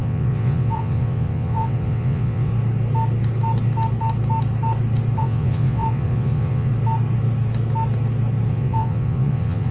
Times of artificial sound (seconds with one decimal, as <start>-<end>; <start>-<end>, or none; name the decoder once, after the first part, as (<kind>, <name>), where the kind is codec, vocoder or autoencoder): 0.0-2.5 (vocoder, WaveNeXt); 5.2-6.7; 8.5-9.7